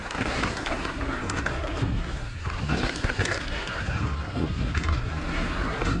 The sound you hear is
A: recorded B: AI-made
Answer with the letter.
B